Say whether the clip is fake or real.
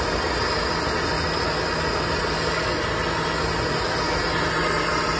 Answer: real